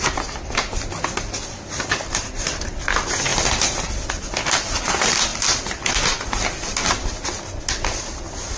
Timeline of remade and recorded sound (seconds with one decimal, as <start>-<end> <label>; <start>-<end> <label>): 0.0-8.6 recorded